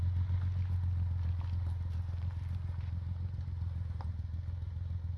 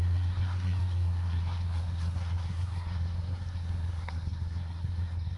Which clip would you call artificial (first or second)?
second